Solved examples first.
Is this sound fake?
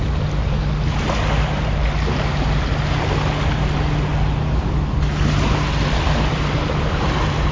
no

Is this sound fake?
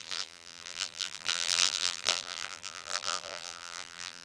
yes